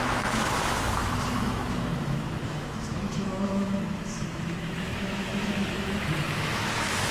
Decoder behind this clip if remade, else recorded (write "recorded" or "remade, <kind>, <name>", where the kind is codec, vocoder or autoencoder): remade, autoencoder, DAC-VAE